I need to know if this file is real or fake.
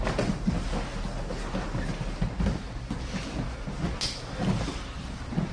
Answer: real